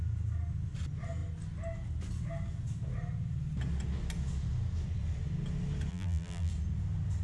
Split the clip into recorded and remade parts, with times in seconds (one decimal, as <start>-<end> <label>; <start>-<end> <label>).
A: 0.0-5.9 recorded; 5.9-6.5 remade; 6.5-7.2 recorded